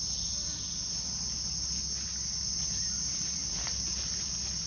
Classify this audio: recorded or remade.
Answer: recorded